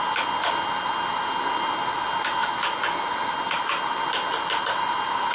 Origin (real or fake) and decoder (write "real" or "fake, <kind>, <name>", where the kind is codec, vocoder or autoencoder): real